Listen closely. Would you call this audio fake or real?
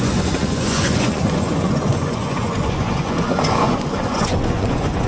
fake